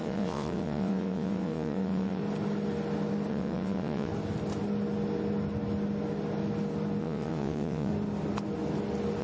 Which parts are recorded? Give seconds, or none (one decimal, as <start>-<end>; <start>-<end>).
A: 2.2-3.3; 4.1-7.0; 7.9-9.2

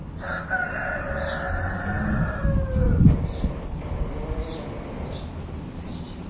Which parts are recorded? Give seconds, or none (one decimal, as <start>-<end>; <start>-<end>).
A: 0.0-6.3

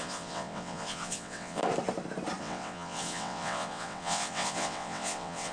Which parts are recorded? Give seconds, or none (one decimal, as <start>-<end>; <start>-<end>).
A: 1.6-2.4

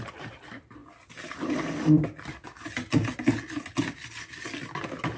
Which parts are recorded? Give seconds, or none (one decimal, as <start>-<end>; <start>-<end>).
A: 0.0-5.2

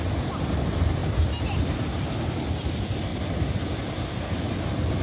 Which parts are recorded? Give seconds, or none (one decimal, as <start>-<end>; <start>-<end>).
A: 0.0-5.0

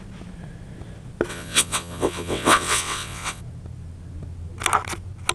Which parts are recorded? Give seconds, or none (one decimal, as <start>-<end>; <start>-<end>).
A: 0.0-1.3; 3.4-5.3